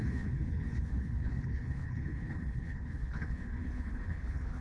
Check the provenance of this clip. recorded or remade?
remade